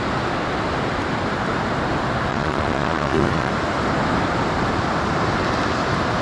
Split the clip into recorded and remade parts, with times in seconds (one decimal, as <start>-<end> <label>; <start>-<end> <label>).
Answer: 0.0-2.3 recorded; 2.3-3.5 remade; 3.5-6.2 recorded